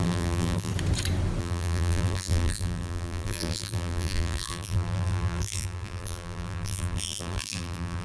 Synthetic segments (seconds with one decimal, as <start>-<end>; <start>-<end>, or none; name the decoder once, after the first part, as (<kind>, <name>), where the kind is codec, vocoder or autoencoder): 0.0-0.7 (vocoder, BigVGAN v2); 1.4-8.0